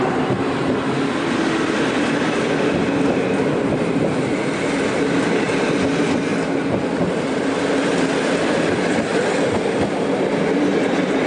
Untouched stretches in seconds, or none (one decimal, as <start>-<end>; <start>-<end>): 2.8-5.2; 6.3-7.0; 9.1-9.9